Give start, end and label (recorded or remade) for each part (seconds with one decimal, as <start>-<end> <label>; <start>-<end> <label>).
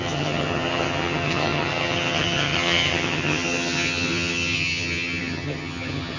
0.0-6.2 remade